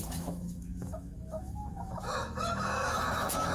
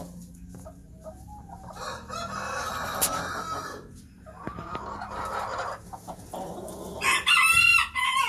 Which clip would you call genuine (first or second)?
second